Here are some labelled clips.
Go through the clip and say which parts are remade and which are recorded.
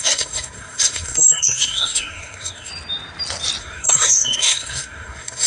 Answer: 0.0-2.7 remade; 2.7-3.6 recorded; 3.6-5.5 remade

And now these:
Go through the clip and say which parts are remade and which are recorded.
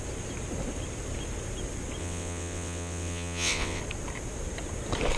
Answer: 0.0-2.0 recorded; 2.0-3.8 remade; 3.8-5.2 recorded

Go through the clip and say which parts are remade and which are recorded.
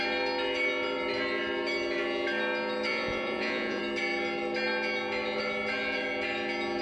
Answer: 0.0-2.9 recorded; 2.9-3.8 remade; 3.8-6.8 recorded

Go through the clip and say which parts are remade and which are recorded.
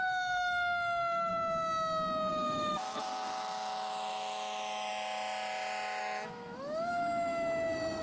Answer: 0.0-1.3 remade; 1.3-2.3 recorded; 2.3-4.9 remade; 4.9-6.0 recorded; 6.0-8.0 remade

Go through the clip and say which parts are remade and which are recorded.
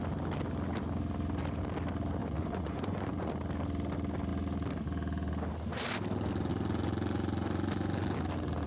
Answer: 0.0-2.2 recorded; 2.2-3.3 remade; 3.3-8.7 recorded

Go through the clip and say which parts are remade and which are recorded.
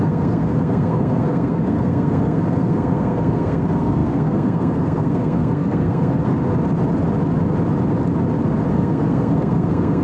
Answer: 0.0-6.4 remade; 6.4-8.7 recorded; 8.7-10.0 remade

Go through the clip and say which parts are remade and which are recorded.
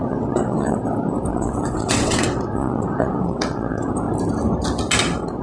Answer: 0.0-0.8 remade; 0.8-1.3 recorded; 1.3-3.9 remade; 3.9-5.4 recorded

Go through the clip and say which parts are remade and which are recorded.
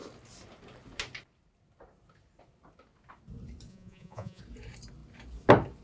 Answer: 0.0-3.7 recorded; 3.7-4.4 remade; 4.4-5.8 recorded